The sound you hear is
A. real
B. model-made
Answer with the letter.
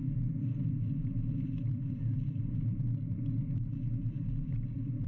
B